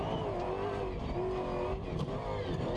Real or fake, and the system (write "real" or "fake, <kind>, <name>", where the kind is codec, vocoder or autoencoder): real